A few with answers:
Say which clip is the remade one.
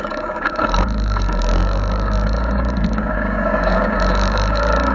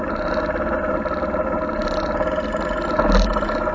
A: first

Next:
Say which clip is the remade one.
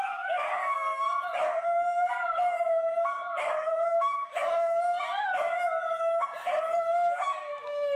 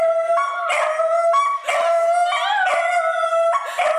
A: first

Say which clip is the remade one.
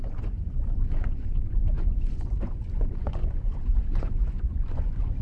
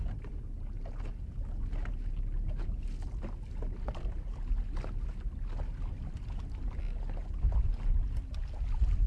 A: first